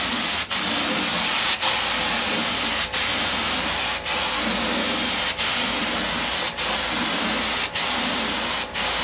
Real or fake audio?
real